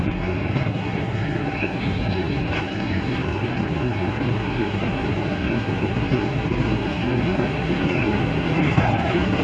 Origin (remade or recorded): remade